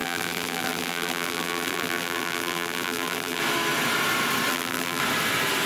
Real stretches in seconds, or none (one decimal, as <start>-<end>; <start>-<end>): 3.4-4.5; 5.0-5.7